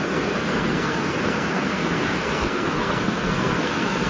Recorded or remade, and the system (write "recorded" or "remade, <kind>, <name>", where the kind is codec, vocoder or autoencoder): remade, codec, SNAC